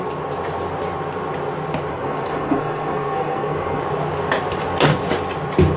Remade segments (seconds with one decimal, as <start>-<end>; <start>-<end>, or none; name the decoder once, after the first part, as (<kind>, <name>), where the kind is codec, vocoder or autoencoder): 1.9-3.8 (codec, SNAC)